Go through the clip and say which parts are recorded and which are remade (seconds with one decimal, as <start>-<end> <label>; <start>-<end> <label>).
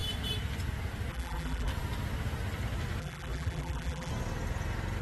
0.0-1.1 recorded; 1.1-1.7 remade; 1.7-3.0 recorded; 3.0-4.1 remade; 4.1-5.0 recorded